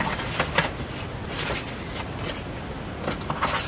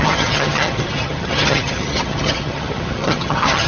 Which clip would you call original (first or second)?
first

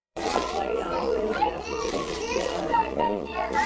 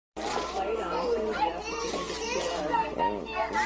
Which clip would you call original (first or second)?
second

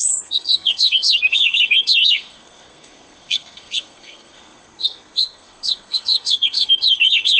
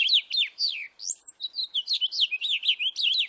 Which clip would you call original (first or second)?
second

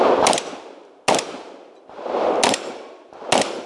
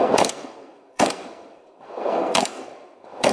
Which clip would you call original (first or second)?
first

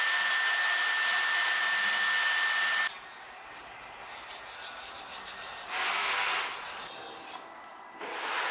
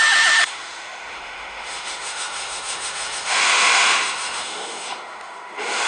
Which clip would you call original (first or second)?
first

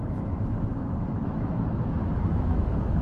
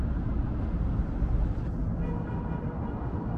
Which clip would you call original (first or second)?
second